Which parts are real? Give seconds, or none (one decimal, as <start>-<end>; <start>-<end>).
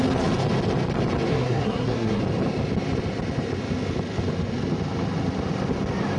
0.0-1.3; 2.2-6.2